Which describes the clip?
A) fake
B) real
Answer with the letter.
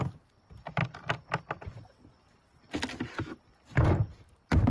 B